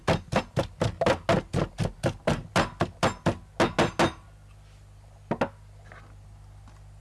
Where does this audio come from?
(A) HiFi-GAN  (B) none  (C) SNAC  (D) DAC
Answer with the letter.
B